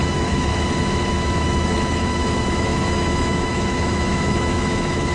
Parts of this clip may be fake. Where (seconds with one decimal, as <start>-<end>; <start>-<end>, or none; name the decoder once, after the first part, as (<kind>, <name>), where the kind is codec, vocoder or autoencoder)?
0.0-0.5 (autoencoder, DAC-VAE); 1.1-5.1